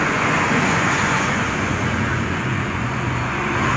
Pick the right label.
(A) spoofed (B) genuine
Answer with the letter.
A